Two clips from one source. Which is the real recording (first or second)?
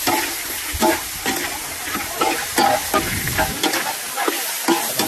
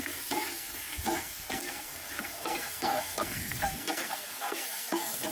first